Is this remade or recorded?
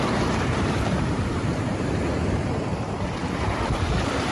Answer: remade